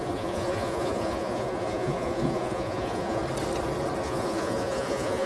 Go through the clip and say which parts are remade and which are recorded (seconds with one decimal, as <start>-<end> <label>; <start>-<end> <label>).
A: 0.0-3.2 remade; 3.2-4.0 recorded; 4.0-5.3 remade